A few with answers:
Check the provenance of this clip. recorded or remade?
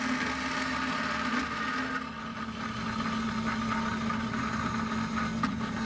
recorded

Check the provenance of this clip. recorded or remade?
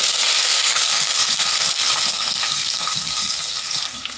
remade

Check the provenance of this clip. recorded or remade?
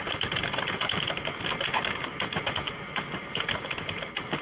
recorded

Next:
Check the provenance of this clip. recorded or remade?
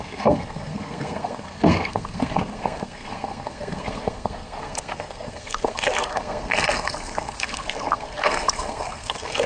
remade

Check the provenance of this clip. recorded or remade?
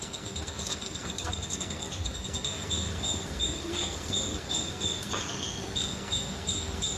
remade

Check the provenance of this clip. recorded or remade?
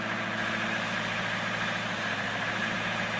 recorded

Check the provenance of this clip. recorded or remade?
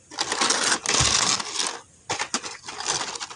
recorded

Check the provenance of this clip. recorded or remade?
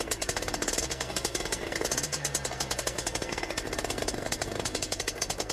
remade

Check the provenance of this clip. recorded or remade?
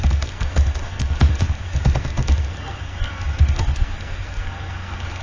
remade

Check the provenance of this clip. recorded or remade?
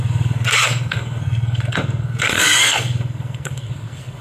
remade